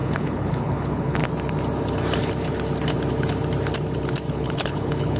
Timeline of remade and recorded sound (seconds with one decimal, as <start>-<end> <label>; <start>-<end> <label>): 0.0-1.2 remade; 1.2-4.3 recorded; 4.3-5.2 remade